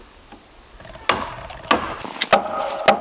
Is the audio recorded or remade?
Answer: recorded